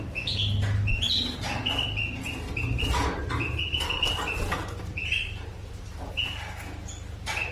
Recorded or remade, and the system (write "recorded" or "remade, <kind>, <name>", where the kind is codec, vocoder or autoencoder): recorded